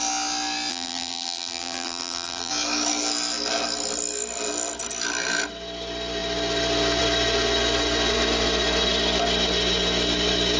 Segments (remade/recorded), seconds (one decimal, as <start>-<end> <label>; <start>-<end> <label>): 0.0-0.7 recorded; 0.7-2.5 remade; 2.5-10.6 recorded